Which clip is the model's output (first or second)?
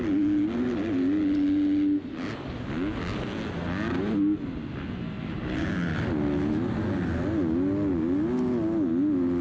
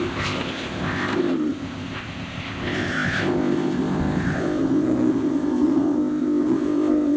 second